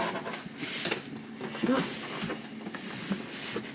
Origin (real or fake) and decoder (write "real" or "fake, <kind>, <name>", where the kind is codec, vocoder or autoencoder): real